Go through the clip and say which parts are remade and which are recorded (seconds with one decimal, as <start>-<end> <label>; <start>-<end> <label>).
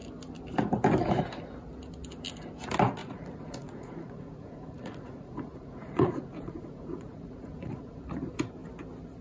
0.0-3.0 recorded; 3.0-8.0 remade; 8.0-9.2 recorded